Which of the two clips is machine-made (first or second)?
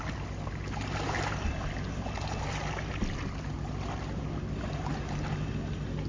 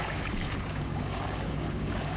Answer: second